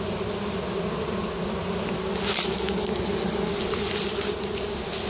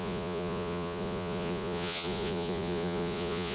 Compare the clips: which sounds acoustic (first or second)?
first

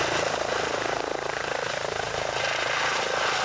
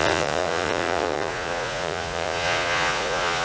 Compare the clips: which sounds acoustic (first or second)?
first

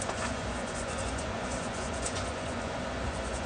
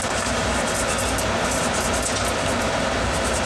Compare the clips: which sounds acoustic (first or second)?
second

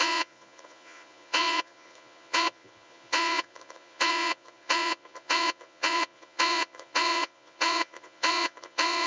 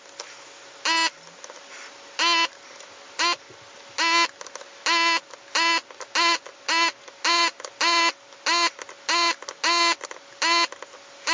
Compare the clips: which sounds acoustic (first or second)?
second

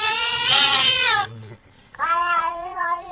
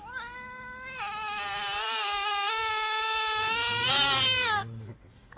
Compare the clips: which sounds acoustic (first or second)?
second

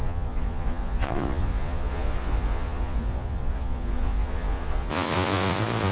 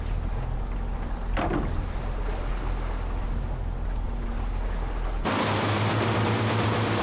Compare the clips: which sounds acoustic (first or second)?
second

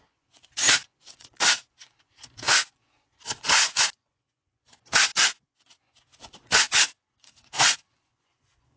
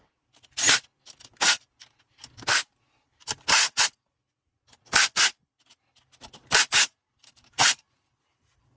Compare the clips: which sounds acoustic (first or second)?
second